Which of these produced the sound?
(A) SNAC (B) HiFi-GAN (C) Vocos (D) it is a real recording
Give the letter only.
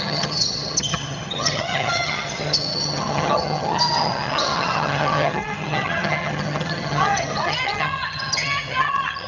B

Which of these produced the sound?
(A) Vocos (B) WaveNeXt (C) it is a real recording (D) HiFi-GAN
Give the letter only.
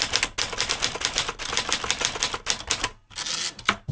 C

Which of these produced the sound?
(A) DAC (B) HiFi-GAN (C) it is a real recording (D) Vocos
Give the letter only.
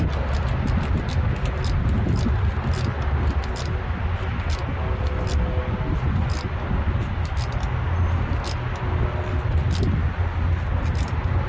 C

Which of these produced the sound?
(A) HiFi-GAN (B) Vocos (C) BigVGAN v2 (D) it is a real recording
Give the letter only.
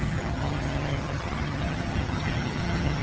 A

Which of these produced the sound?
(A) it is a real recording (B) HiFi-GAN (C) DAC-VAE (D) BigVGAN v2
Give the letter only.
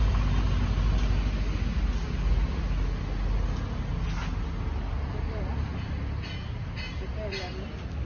A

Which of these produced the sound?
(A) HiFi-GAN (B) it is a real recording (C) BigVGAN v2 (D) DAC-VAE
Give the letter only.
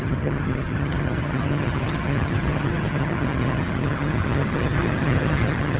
A